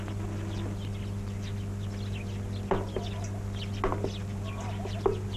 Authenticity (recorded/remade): recorded